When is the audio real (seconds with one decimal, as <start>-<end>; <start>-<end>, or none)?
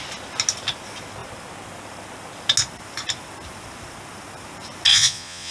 0.0-4.9